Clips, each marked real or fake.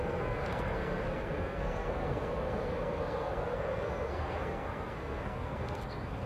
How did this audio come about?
fake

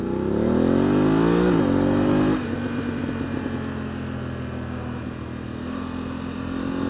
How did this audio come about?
real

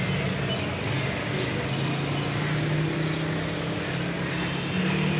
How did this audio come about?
real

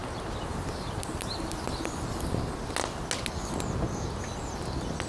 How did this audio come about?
real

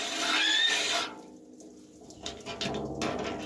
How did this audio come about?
real